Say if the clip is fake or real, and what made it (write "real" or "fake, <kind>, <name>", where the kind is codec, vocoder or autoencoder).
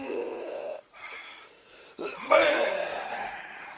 fake, vocoder, Vocos